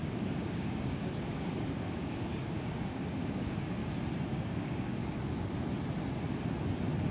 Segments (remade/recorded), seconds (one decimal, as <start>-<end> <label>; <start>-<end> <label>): 0.0-3.8 remade; 3.8-4.3 recorded; 4.3-5.0 remade; 5.0-7.1 recorded